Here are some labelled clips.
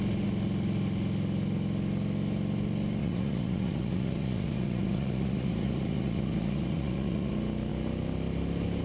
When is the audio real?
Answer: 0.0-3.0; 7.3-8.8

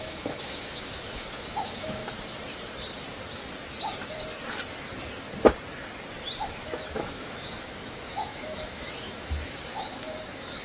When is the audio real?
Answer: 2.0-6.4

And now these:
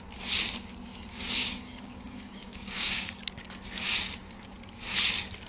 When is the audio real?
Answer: 0.0-1.4; 3.2-5.5

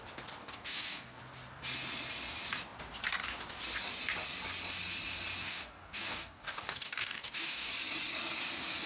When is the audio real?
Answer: 0.0-0.4; 1.2-5.4; 7.7-8.9

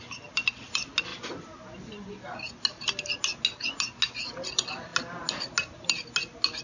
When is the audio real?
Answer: 0.0-6.6

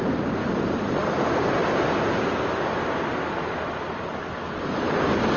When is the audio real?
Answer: 0.0-5.4